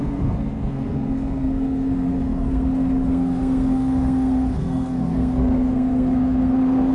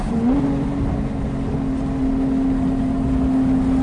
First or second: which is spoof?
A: first